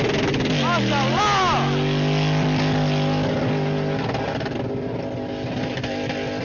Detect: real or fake real